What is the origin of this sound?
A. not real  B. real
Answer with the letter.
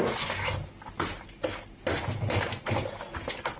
B